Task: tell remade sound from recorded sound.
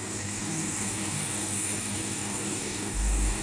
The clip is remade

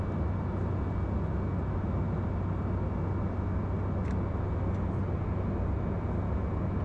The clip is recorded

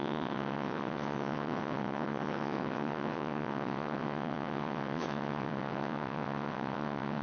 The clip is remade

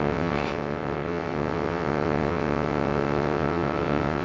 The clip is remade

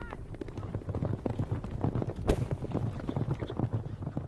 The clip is recorded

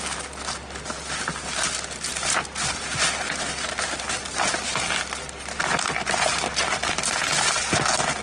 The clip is recorded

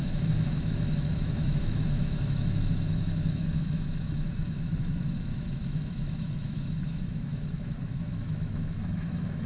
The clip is remade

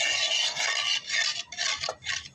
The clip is recorded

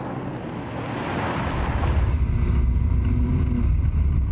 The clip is recorded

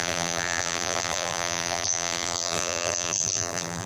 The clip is remade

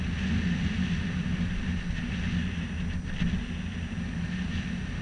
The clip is recorded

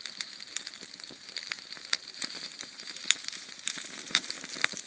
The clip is remade